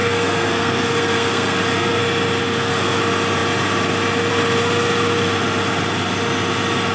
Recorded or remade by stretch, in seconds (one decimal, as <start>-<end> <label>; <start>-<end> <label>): 0.0-2.0 remade; 2.0-2.4 recorded; 2.4-3.0 remade; 3.0-6.9 recorded